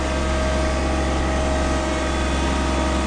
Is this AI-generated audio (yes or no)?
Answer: no